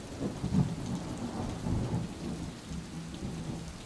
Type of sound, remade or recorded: recorded